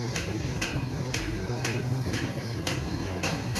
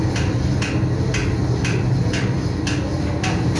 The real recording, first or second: second